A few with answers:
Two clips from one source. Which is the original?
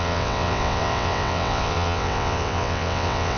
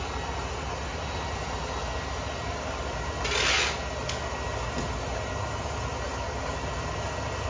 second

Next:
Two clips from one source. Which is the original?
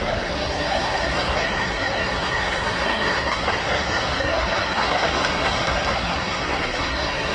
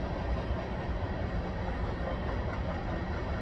second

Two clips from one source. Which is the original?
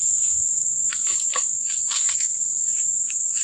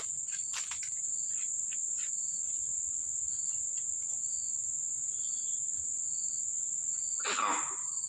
second